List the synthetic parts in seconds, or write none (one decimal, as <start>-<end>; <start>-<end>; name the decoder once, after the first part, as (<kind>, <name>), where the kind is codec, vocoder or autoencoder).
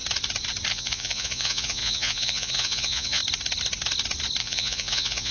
0.7-3.2 (vocoder, Vocos); 4.4-5.3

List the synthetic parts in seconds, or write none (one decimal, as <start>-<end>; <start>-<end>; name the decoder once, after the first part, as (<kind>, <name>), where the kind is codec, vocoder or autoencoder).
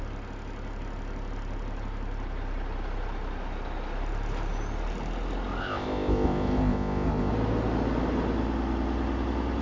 5.6-7.3 (codec, ZipCodec)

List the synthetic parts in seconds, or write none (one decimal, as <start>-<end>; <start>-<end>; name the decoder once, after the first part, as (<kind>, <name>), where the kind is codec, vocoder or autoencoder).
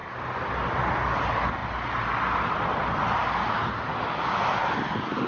none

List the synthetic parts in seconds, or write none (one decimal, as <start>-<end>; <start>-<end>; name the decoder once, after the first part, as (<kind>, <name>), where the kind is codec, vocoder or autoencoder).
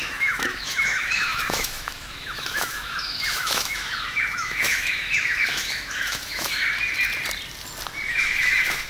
0.0-6.6 (autoencoder, DAC-VAE); 8.1-8.9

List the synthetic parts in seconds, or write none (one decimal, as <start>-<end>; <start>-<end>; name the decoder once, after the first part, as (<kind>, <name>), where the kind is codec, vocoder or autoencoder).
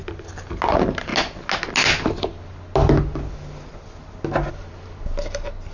none